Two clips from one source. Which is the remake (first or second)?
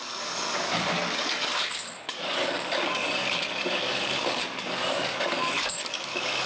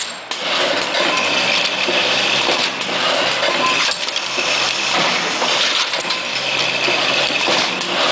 first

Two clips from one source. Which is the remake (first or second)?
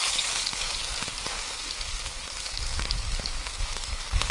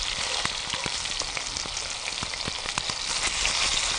first